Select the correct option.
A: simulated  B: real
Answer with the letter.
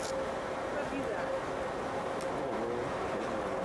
B